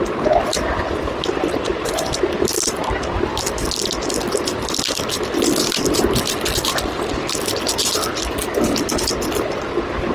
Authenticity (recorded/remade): recorded